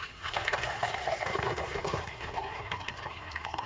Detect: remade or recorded remade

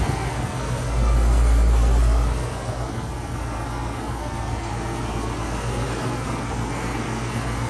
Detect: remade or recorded remade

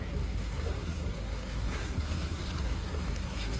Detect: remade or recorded remade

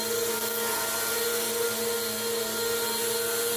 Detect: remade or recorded recorded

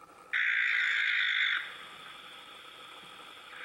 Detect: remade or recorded recorded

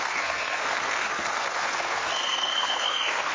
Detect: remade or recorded remade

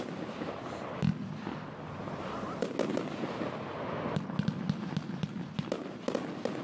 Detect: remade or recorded recorded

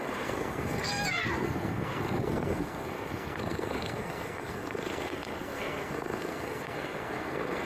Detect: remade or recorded remade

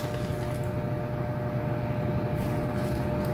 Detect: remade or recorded recorded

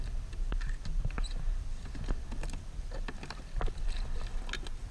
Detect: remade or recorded recorded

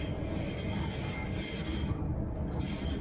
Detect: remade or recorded recorded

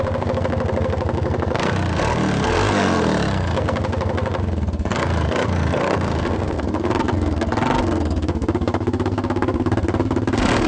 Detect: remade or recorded remade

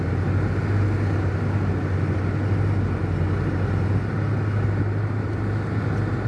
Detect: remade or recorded recorded